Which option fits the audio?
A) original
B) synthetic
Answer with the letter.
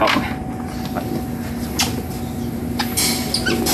A